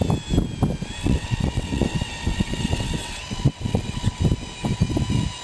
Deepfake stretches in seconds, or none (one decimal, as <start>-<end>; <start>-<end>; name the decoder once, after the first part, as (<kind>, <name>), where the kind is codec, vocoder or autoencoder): 1.0-4.2 (vocoder, WaveNeXt)